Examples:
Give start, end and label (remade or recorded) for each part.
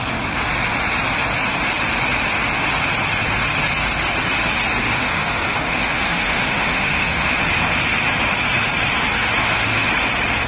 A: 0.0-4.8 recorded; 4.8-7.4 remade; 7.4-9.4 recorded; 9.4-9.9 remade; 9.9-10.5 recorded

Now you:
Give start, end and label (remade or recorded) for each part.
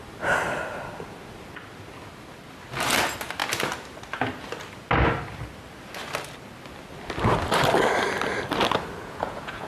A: 0.0-9.0 recorded; 9.0-9.7 remade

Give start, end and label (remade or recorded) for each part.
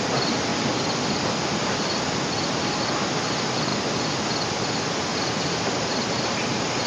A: 0.0-0.5 recorded; 0.5-2.8 remade; 2.8-5.1 recorded; 5.1-6.5 remade; 6.5-6.9 recorded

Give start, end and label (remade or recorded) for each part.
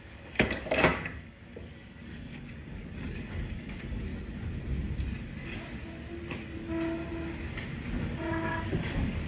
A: 0.0-4.1 remade; 4.1-8.0 recorded; 8.0-9.3 remade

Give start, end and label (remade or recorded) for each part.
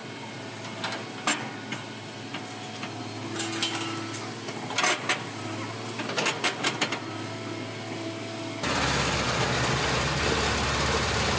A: 0.0-11.4 recorded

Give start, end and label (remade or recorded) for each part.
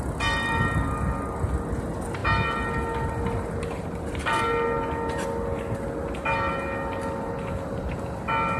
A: 0.0-8.6 recorded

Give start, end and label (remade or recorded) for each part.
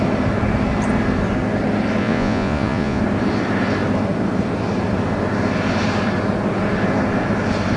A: 0.0-2.0 recorded; 2.0-3.0 remade; 3.0-7.8 recorded